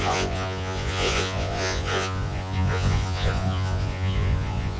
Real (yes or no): no